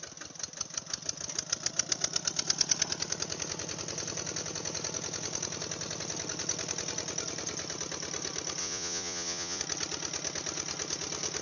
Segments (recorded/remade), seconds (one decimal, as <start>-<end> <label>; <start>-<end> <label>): 0.0-8.6 recorded; 8.6-9.6 remade; 9.6-11.4 recorded